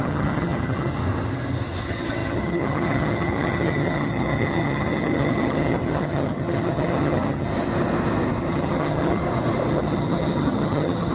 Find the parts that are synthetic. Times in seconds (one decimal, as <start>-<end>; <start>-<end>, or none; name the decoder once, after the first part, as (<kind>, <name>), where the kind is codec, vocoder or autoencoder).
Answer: 0.0-1.0 (vocoder, HiFi-GAN); 1.8-7.5; 8.5-9.2; 9.7-11.1